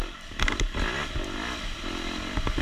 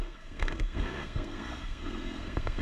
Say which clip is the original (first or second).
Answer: first